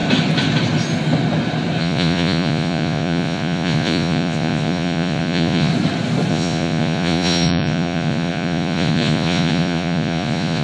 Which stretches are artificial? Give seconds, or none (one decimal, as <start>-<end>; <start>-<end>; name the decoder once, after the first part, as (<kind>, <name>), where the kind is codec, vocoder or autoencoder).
1.8-5.7 (vocoder, Vocos); 6.3-10.6